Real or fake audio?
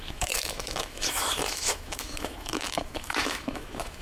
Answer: fake